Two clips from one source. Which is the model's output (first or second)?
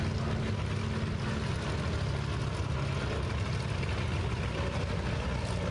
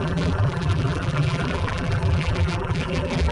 second